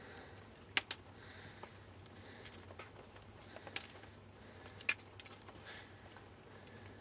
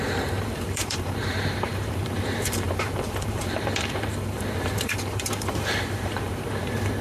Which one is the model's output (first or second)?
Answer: second